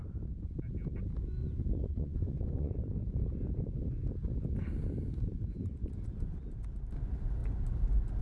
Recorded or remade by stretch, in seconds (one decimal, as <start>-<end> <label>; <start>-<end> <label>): 0.0-1.4 recorded; 1.4-2.8 remade; 2.8-5.6 recorded; 5.6-6.3 remade; 6.3-8.2 recorded